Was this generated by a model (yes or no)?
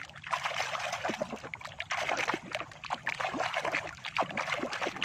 no